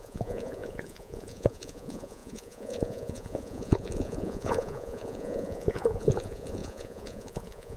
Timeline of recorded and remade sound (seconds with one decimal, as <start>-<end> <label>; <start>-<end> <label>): 0.0-7.8 remade

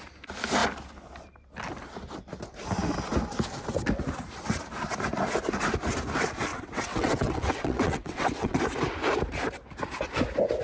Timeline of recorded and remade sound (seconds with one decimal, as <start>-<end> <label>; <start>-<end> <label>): 0.0-6.5 recorded; 6.5-8.6 remade; 8.6-10.6 recorded

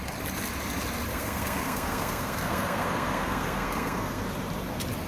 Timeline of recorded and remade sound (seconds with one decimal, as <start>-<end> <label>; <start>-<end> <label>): 0.0-1.1 recorded; 1.1-4.2 remade; 4.2-5.1 recorded

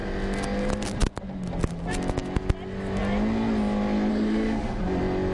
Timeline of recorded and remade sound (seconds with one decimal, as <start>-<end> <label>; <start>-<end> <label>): 0.0-4.1 recorded; 4.1-4.8 remade; 4.8-5.3 recorded

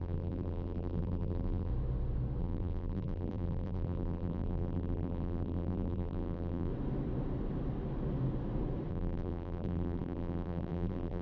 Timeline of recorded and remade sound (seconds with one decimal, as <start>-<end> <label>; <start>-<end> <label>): 0.0-1.7 remade; 1.7-2.4 recorded; 2.4-6.7 remade; 6.7-8.9 recorded; 8.9-11.2 remade

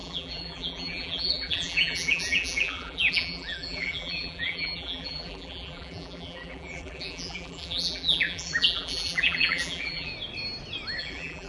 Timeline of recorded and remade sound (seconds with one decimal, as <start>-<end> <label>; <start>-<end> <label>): 0.0-10.1 remade; 10.1-11.0 recorded; 11.0-11.5 remade

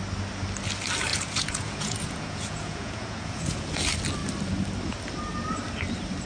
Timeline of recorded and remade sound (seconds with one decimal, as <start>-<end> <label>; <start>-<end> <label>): 0.0-1.1 recorded; 1.1-3.7 remade; 3.7-6.3 recorded

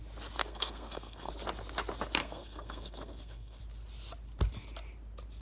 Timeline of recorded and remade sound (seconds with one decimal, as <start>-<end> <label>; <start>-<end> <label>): 0.0-0.4 recorded; 0.4-1.3 remade; 1.3-2.2 recorded; 2.2-3.6 remade; 3.6-5.4 recorded